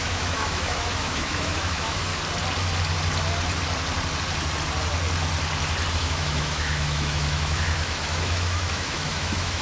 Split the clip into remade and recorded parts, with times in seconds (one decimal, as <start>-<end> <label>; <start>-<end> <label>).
0.0-2.1 remade; 2.1-5.9 recorded; 5.9-9.6 remade